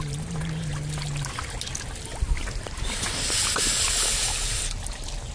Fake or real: real